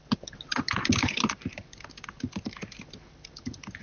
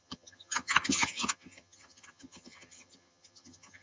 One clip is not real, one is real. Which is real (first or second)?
first